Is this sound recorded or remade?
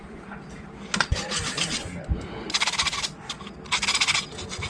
recorded